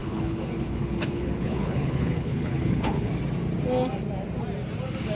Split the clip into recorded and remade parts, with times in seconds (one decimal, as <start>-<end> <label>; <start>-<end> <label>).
0.0-3.1 remade; 3.1-5.1 recorded